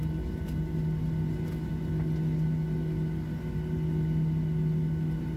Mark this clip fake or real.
real